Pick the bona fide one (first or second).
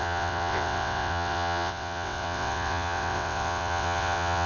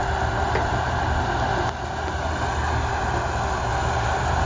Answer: second